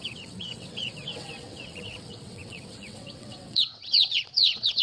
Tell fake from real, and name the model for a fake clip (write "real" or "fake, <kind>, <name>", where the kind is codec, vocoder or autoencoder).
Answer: fake, vocoder, WaveNeXt